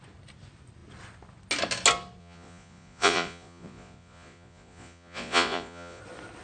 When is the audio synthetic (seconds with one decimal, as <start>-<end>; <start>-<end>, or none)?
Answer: 2.2-6.0